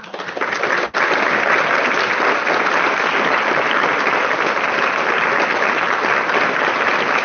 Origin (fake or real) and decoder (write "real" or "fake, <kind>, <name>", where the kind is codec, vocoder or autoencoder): real